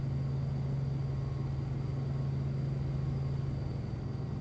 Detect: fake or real real